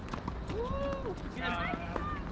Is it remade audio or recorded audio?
recorded